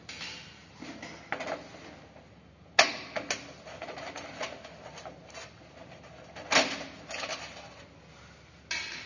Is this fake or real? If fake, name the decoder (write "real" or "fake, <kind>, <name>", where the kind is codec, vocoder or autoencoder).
real